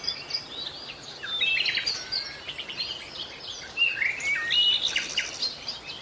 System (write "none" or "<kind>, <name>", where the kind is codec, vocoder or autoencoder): none